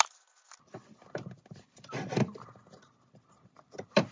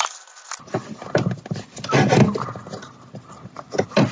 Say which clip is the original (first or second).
second